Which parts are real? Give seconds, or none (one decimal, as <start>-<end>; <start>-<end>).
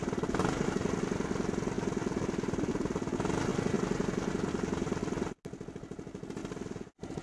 0.0-7.2